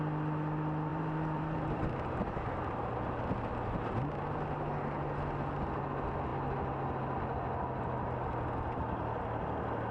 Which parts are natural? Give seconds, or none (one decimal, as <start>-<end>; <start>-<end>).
0.0-0.9; 2.9-9.9